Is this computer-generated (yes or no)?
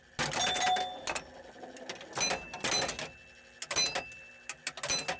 no